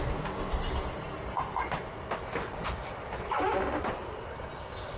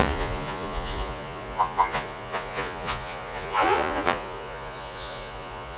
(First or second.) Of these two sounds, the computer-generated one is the second